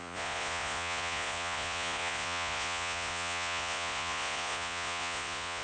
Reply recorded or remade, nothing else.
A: remade